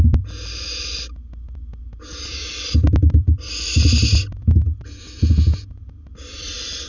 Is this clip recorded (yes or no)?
yes